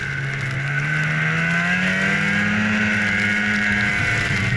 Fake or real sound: real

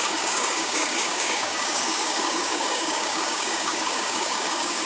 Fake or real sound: fake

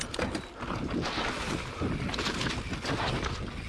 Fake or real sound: real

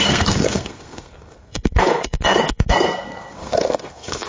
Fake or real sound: fake